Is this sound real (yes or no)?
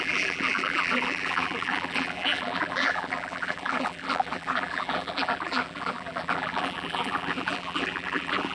no